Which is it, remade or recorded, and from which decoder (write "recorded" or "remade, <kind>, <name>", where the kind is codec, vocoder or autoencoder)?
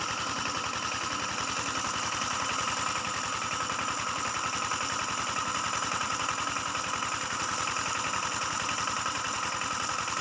recorded